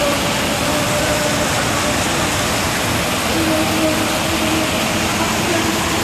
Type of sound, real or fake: real